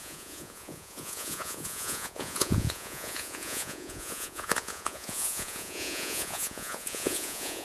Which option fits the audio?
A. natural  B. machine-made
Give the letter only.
B